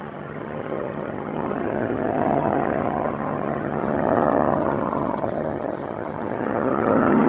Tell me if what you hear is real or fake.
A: fake